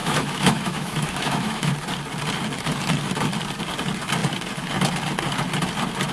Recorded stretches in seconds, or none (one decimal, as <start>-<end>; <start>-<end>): 1.7-6.1